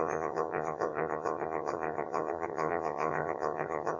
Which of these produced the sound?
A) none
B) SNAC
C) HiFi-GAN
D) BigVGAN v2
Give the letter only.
C